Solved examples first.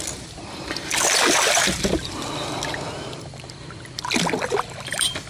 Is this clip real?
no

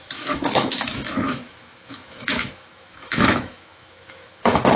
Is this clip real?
no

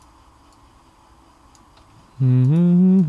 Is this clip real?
yes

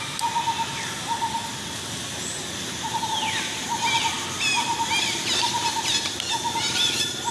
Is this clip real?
yes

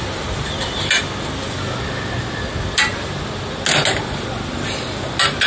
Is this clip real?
yes